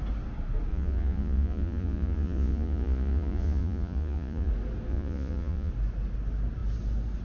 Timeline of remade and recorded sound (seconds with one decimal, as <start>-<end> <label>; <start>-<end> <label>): 0.0-0.7 recorded; 0.7-4.5 remade; 4.5-4.9 recorded; 4.9-5.7 remade; 5.7-7.2 recorded